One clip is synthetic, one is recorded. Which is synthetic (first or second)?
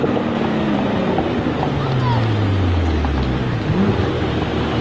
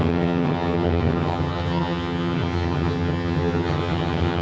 second